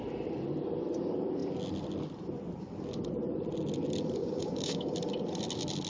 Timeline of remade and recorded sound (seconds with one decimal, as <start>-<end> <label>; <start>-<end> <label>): 0.0-4.2 recorded; 4.2-4.9 remade; 4.9-5.9 recorded